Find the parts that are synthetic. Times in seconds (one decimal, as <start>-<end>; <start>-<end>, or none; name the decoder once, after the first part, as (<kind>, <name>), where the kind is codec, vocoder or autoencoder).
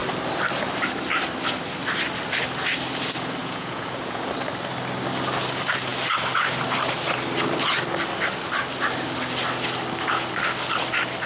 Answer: 3.4-4.2 (vocoder, Vocos)